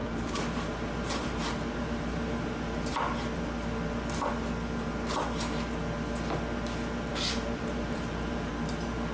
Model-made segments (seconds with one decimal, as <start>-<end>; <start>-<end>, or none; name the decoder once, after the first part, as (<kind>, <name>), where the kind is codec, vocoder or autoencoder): 0.0-2.9 (vocoder, BigVGAN v2); 7.1-8.5